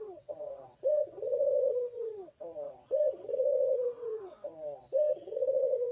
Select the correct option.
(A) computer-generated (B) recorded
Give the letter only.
A